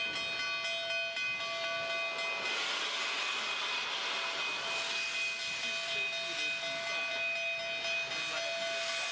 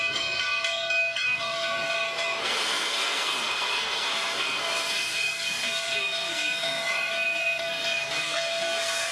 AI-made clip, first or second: second